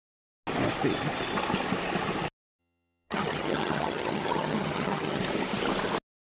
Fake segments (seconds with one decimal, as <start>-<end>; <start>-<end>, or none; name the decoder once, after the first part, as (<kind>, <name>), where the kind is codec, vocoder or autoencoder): 2.6-5.2 (vocoder, HiFi-GAN)

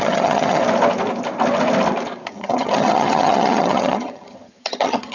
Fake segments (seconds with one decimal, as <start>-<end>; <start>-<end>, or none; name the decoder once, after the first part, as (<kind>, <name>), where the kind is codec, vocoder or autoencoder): 0.0-0.6 (vocoder, HiFi-GAN); 2.3-5.1

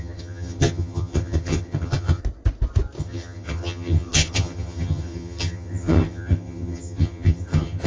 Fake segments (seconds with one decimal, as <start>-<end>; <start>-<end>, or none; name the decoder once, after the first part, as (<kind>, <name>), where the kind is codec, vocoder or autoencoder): 0.0-2.2 (vocoder, HiFi-GAN); 3.0-7.9

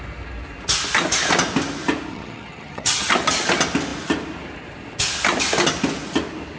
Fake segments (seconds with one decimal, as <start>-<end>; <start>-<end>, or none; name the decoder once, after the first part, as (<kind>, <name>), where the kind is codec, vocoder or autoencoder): 2.1-3.1 (vocoder, HiFi-GAN)